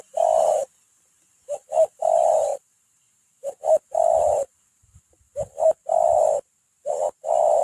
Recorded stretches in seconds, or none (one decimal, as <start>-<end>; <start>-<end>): 0.0-2.5; 3.6-7.6